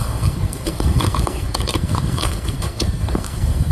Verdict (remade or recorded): remade